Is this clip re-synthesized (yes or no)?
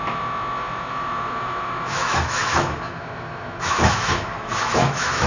yes